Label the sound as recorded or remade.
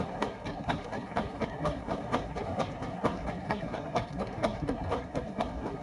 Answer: remade